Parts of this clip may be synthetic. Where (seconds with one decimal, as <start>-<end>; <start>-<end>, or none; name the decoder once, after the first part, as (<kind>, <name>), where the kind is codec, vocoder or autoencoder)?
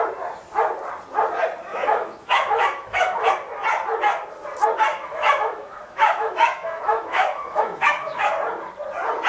1.7-3.3 (autoencoder, DAC-VAE); 4.9-8.3